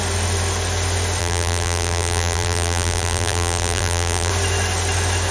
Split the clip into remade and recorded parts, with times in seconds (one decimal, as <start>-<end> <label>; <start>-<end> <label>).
0.0-1.2 recorded; 1.2-4.3 remade; 4.3-5.3 recorded